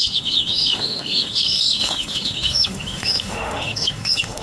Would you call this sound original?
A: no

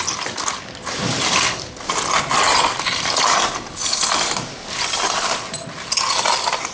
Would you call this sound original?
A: yes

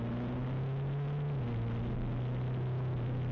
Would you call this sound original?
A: yes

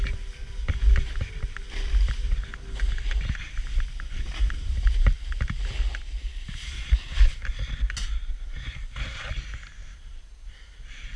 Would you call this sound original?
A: yes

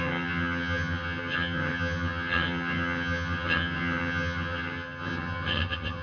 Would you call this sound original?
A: no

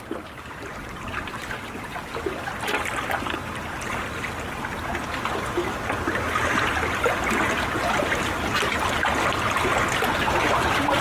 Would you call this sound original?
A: yes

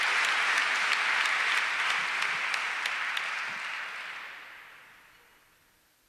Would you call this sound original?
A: yes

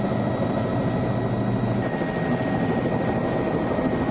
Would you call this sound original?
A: yes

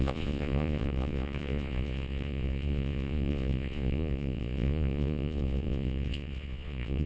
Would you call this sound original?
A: no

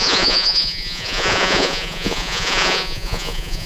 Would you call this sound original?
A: no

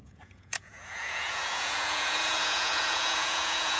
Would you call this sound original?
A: no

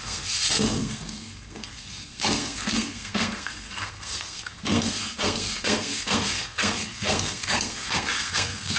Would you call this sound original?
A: no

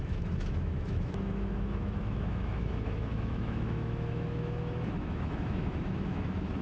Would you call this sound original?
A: no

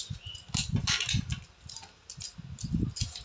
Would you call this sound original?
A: yes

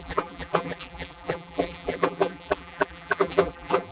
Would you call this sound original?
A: no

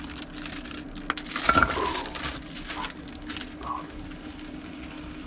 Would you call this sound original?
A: yes